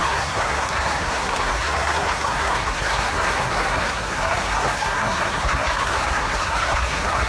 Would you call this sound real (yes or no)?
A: no